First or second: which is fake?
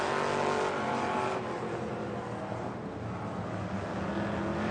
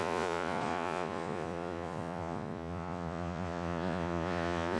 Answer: second